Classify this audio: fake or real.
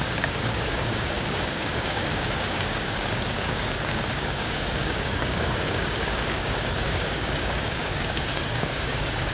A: fake